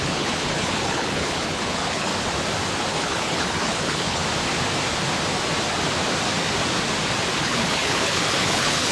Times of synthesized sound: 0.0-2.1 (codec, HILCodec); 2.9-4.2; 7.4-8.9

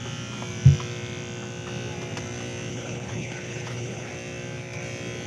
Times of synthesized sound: 2.7-4.1 (codec, HILCodec)

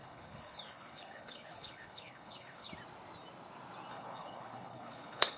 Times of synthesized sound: 0.0-2.7 (codec, HILCodec); 3.9-5.4

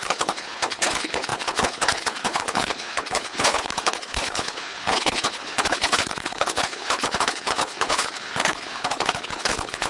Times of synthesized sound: 0.0-9.9 (codec, HILCodec)

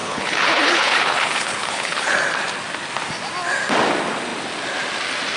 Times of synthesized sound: 0.0-2.1 (codec, HILCodec)

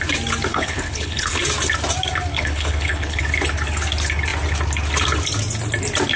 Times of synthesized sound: 0.5-1.4 (codec, HILCodec); 2.3-3.2